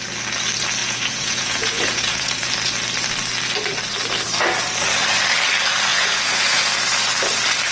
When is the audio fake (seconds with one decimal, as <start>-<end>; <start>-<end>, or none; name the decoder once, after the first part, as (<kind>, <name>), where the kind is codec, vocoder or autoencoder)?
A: 0.8-2.5 (vocoder, Vocos); 5.9-6.7